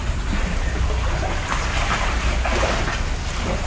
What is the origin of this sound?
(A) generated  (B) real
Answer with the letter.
B